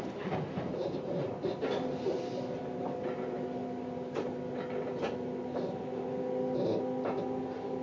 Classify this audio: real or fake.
real